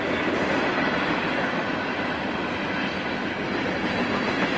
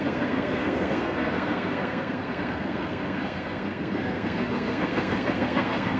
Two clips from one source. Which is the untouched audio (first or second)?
first